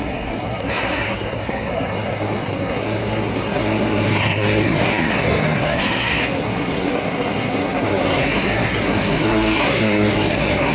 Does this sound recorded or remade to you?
remade